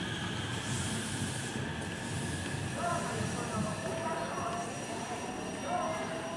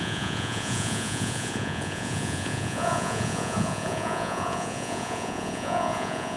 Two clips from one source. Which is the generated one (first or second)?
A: second